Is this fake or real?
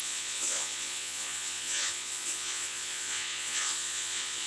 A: fake